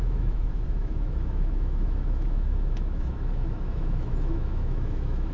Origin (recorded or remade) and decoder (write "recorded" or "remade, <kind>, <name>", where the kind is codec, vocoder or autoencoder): remade, autoencoder, DAC-VAE